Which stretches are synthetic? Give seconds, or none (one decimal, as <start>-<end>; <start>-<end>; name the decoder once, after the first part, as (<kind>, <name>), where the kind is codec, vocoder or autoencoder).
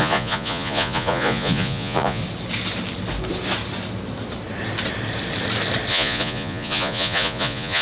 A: 0.0-2.2 (vocoder, Vocos); 5.9-7.8